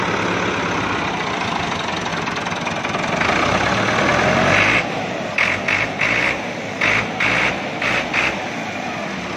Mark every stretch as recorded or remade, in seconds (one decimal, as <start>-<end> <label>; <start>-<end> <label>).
0.0-9.4 recorded